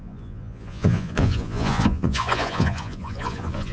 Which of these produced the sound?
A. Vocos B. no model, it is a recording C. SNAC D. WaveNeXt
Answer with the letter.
A